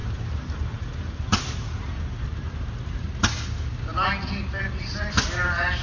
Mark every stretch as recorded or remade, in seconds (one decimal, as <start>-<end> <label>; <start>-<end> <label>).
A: 0.0-3.1 remade; 3.1-5.8 recorded